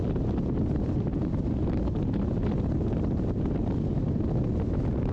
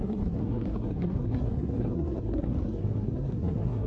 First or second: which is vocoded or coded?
second